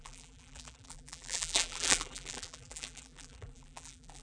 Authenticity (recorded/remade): remade